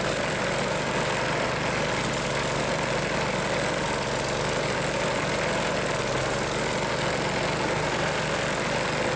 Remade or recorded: recorded